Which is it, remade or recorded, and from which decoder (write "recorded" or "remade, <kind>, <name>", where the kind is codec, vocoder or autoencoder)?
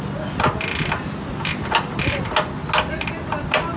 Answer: recorded